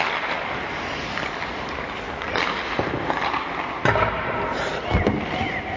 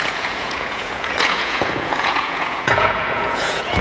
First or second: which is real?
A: first